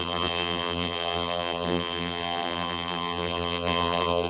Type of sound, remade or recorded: remade